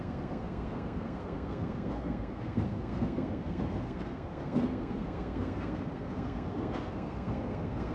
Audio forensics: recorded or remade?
remade